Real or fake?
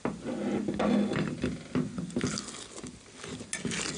real